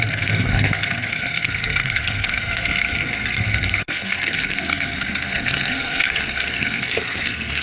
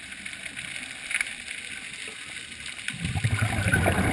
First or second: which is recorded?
second